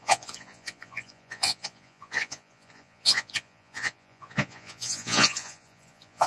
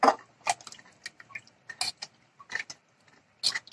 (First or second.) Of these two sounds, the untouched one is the second